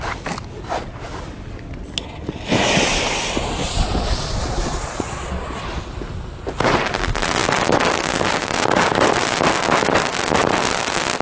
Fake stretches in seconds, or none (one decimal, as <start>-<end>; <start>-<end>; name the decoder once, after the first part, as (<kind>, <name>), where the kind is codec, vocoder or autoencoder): 3.6-5.8 (vocoder, Vocos)